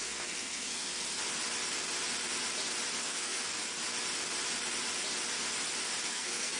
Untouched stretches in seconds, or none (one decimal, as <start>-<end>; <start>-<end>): 0.9-3.0; 3.6-6.1